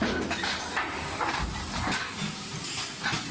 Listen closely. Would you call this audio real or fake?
real